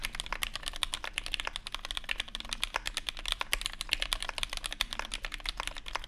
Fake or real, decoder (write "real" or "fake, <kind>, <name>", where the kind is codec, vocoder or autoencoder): real